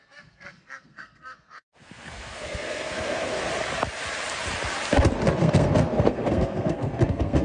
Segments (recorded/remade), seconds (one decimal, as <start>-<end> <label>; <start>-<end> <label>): 0.0-3.4 remade; 3.4-5.4 recorded; 5.4-7.4 remade